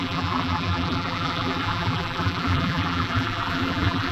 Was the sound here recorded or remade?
remade